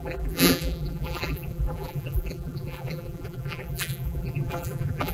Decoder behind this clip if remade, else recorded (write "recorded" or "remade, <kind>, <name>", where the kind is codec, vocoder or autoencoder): remade, vocoder, BigVGAN v2